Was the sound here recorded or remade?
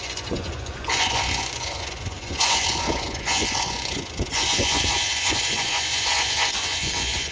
remade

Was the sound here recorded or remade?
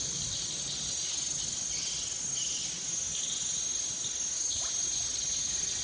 recorded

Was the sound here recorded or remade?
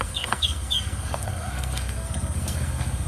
remade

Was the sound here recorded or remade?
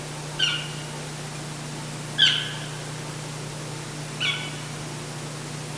recorded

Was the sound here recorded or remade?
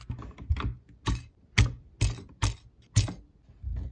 recorded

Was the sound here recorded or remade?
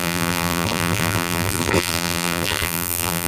remade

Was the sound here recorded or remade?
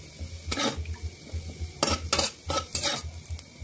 recorded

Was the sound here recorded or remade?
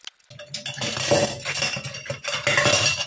recorded